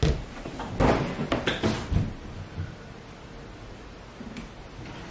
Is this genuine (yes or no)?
yes